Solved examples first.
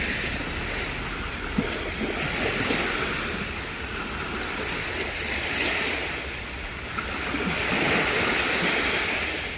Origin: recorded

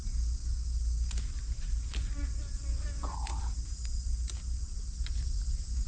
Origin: recorded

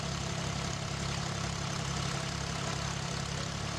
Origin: recorded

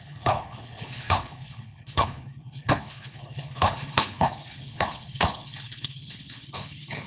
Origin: remade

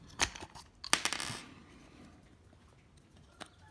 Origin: recorded